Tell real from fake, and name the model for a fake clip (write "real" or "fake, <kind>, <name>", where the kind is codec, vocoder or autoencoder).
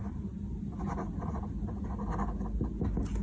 real